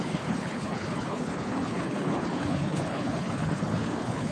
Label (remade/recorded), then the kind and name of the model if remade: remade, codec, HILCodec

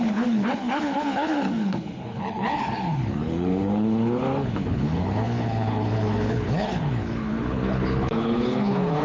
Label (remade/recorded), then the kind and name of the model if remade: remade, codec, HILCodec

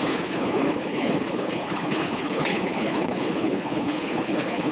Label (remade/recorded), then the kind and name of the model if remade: remade, codec, HILCodec